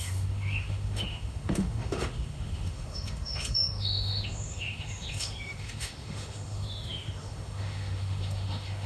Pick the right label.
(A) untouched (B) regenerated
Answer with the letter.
B